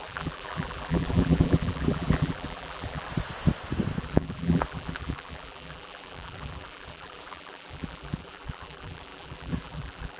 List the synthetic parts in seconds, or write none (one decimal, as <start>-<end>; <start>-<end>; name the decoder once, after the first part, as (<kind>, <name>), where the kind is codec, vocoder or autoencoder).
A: 0.0-3.1 (vocoder, BigVGAN v2); 4.0-10.2